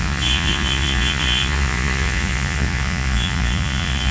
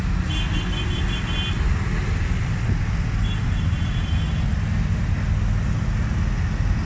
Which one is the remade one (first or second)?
first